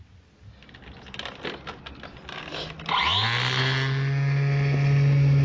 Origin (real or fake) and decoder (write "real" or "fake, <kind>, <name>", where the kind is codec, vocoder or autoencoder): real